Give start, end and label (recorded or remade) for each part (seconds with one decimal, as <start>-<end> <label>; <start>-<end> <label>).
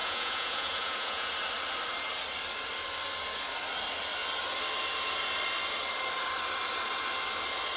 0.0-1.3 remade; 1.3-7.8 recorded